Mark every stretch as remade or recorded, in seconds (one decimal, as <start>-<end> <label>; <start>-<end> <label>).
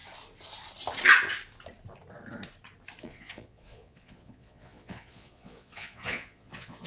0.0-3.0 recorded; 3.0-6.9 remade